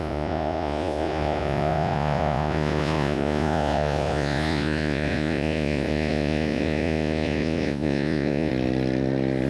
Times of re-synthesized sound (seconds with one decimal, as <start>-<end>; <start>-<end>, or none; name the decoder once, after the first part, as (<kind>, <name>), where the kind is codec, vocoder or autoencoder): 0.0-8.5 (vocoder, Vocos)